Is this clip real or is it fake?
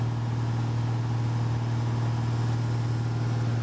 real